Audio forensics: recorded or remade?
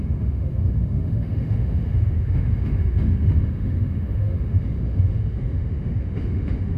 remade